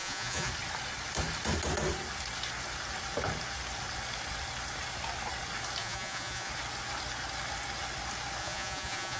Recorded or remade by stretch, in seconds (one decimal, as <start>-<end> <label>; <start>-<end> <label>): 0.0-0.5 remade; 0.5-5.8 recorded; 5.8-6.5 remade; 6.5-8.4 recorded; 8.4-9.2 remade

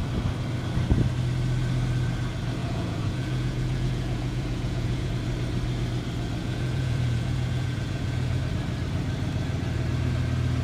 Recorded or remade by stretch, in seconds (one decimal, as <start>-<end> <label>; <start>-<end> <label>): 0.0-2.6 recorded; 2.6-5.1 remade; 5.1-6.4 recorded; 6.4-8.4 remade; 8.4-10.6 recorded

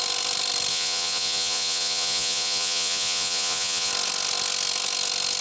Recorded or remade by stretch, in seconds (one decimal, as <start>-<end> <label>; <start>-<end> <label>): 0.0-0.7 recorded; 0.7-3.9 remade; 3.9-5.4 recorded

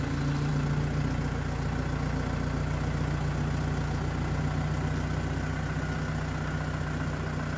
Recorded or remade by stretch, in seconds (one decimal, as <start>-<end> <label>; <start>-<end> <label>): 0.0-7.6 recorded

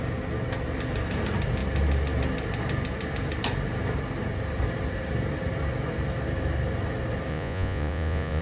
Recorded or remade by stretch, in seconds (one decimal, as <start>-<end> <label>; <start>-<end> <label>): 0.0-7.3 recorded; 7.3-8.4 remade